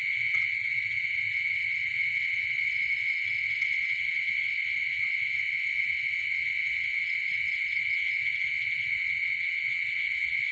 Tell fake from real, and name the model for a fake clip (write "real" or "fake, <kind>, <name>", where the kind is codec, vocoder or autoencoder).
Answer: fake, vocoder, WaveNeXt